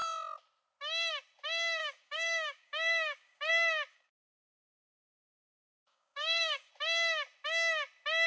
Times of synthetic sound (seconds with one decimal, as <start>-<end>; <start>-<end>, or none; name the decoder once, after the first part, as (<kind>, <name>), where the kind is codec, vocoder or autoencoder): 1.8-3.5 (codec, DAC); 3.9-6.7